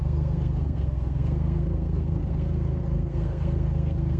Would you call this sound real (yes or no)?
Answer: no